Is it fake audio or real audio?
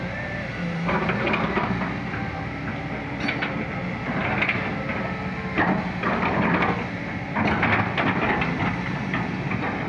real